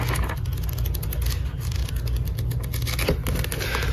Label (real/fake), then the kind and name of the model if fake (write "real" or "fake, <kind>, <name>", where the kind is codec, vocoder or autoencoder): real